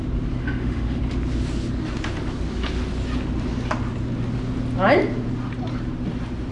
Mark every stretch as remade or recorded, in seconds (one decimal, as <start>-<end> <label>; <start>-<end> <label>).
0.0-0.4 recorded; 0.4-1.0 remade; 1.0-6.5 recorded